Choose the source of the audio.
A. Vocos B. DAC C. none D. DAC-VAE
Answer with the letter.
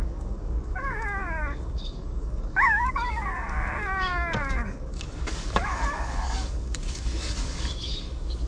B